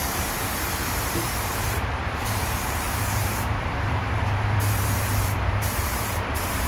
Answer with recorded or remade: remade